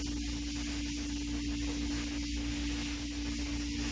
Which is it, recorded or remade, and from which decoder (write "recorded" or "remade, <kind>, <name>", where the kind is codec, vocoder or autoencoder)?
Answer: recorded